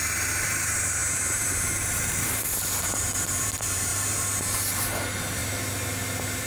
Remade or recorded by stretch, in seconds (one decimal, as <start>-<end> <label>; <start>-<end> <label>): 0.0-3.9 remade; 3.9-4.4 recorded; 4.4-5.4 remade; 5.4-6.1 recorded; 6.1-6.5 remade